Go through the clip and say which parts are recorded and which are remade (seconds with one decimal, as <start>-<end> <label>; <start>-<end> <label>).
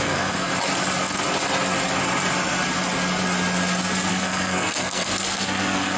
0.0-0.5 remade; 0.5-4.1 recorded; 4.1-6.0 remade